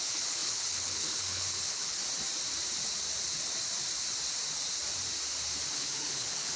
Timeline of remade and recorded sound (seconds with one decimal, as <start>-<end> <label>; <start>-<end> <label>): 0.0-2.0 remade; 2.0-5.7 recorded; 5.7-6.6 remade